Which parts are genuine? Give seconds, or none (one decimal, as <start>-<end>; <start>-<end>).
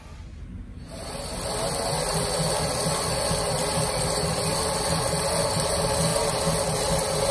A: 0.0-7.3